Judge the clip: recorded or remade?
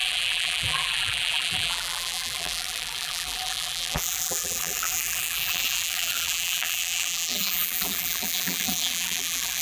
remade